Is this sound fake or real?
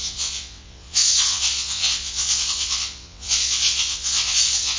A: fake